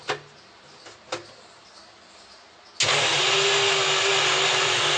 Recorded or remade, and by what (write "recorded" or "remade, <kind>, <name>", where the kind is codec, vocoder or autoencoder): recorded